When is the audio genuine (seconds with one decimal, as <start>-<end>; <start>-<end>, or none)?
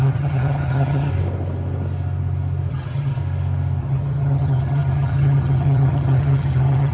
1.1-2.7; 3.2-3.8